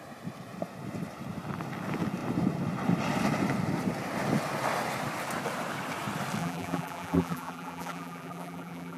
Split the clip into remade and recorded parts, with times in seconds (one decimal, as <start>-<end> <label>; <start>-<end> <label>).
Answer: 0.0-6.4 recorded; 6.4-9.0 remade